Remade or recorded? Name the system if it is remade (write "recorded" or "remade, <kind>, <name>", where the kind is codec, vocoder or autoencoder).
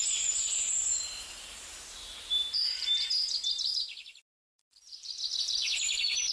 remade, vocoder, BigVGAN v2